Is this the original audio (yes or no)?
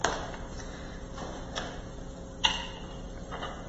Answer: yes